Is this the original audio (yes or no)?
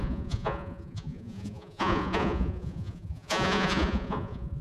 no